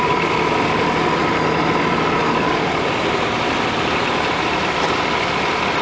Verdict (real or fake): real